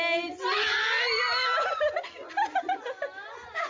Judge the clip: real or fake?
real